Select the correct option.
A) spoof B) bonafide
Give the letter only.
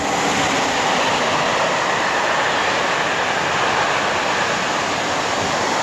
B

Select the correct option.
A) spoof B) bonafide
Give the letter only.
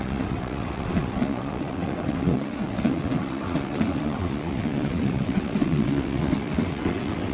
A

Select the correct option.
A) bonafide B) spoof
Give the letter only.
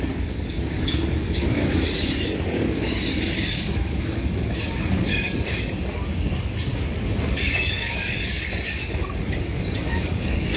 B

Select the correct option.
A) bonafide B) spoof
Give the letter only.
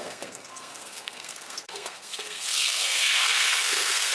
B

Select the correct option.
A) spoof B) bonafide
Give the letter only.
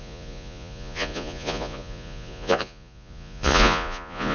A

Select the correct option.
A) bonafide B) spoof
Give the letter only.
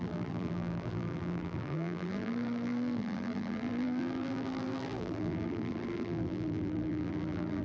B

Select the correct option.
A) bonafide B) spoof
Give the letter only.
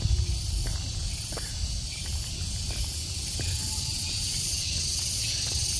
A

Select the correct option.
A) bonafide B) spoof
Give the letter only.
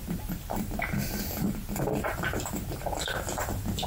B